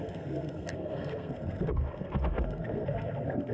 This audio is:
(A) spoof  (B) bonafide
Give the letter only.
A